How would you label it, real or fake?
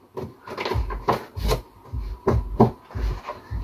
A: real